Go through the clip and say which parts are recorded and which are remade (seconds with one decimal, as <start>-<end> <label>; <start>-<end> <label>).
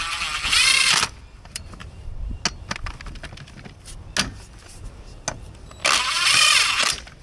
0.0-1.8 remade; 1.8-6.1 recorded; 6.1-7.2 remade